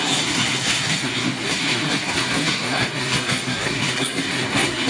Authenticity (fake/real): fake